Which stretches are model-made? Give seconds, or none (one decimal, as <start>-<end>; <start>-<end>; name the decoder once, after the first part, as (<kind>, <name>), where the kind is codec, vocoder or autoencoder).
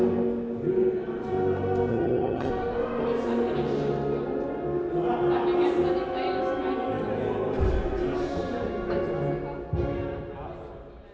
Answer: 1.9-2.5 (vocoder, HiFi-GAN)